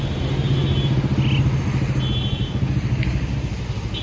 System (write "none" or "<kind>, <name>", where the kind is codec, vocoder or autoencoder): none